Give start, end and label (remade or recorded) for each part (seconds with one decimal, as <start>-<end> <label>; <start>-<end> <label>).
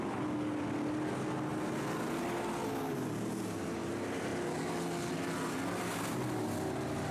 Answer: 0.0-7.1 recorded